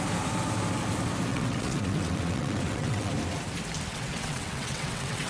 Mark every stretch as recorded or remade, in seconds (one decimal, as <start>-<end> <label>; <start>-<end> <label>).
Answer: 0.0-1.3 recorded; 1.3-3.1 remade; 3.1-3.9 recorded; 3.9-5.3 remade